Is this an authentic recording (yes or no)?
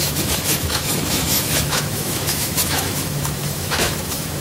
no